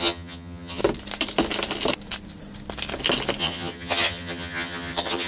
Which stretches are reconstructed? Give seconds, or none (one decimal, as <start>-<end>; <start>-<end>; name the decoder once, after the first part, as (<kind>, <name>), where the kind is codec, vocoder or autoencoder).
0.0-0.8 (vocoder, HiFi-GAN); 3.4-5.3